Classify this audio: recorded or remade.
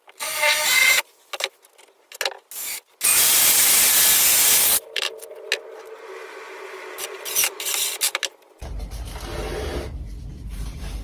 recorded